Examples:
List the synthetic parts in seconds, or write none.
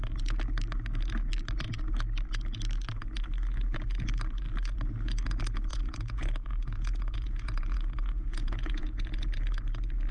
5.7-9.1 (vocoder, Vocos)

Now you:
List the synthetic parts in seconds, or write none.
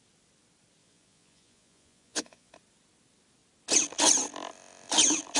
0.8-2.5 (vocoder, Vocos)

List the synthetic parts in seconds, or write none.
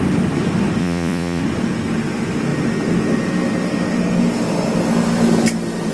0.8-1.4 (vocoder, Vocos)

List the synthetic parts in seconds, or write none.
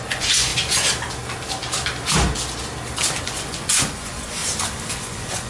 0.0-0.5 (vocoder, Vocos); 3.2-4.4; 4.9-5.5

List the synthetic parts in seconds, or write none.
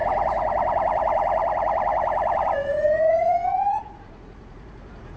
0.0-5.2 (vocoder, Vocos)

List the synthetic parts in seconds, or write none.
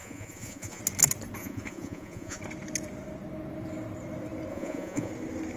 0.0-0.8 (vocoder, Vocos); 1.4-2.4; 4.5-5.1